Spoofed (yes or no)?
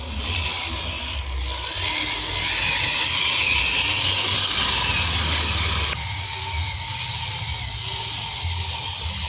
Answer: no